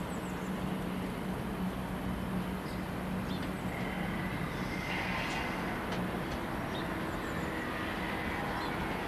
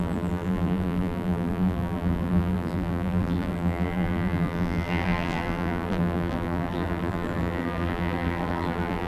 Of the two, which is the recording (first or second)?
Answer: first